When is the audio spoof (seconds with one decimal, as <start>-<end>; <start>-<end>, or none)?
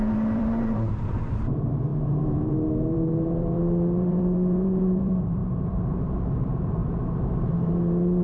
0.0-8.2